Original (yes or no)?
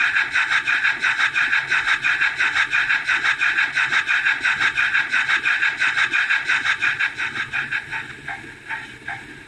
yes